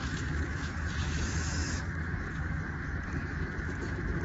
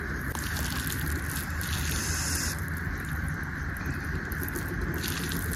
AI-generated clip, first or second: first